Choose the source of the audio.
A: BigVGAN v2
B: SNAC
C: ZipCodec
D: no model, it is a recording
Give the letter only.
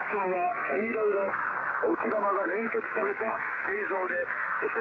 B